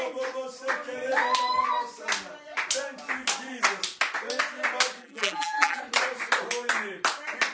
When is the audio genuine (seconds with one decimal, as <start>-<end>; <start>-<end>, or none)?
0.0-5.0; 5.8-7.5